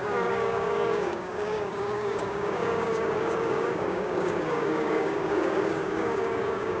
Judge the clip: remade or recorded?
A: remade